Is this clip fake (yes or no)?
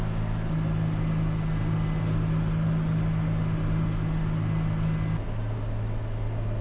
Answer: no